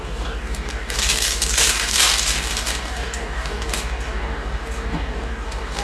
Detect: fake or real fake